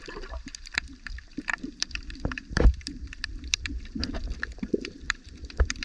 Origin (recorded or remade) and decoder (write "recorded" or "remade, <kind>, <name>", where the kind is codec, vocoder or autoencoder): remade, vocoder, BigVGAN v2